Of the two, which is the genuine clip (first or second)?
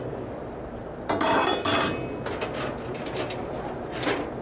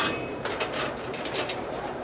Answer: first